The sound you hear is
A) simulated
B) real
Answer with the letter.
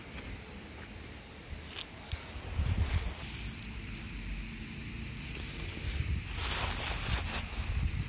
B